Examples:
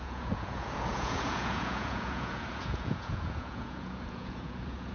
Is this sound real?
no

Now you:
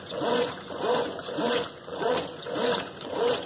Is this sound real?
no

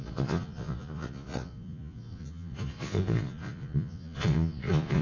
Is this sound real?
no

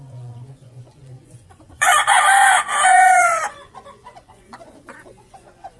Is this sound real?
no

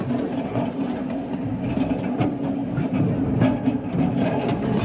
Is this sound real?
yes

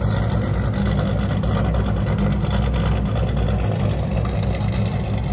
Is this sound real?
yes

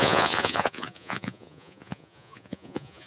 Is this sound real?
no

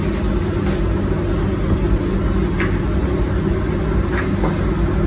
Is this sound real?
yes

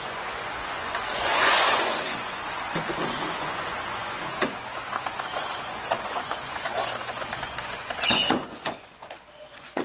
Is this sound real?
no